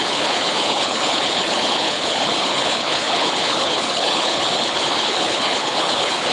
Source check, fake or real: fake